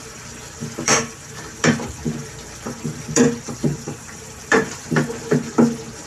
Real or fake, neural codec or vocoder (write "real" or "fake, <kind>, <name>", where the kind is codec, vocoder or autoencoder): fake, vocoder, BigVGAN v2